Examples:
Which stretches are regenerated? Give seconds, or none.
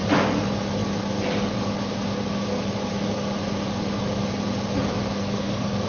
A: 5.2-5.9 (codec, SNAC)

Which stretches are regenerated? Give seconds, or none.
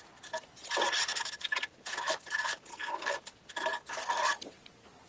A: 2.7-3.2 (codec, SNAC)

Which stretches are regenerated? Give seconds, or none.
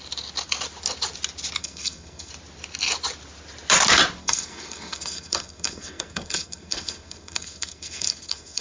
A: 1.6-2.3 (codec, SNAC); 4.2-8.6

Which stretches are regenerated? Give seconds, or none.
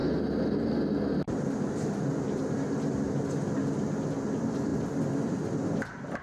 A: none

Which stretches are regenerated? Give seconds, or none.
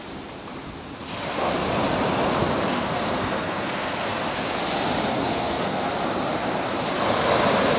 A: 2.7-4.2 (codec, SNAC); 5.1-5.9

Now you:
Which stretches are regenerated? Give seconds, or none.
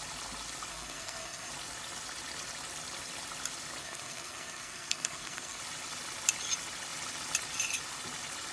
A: 0.7-1.5 (codec, SNAC); 3.8-5.6